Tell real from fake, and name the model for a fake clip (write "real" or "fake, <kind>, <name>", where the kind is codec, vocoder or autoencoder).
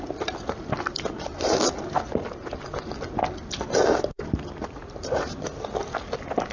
real